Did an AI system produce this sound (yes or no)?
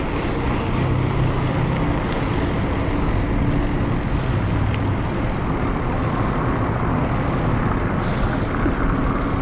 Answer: no